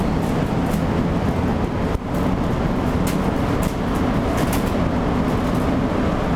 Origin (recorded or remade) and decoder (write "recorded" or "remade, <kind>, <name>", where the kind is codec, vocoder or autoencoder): recorded